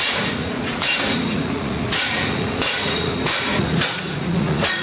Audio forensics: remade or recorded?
remade